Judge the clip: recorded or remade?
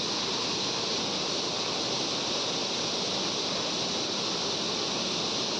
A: recorded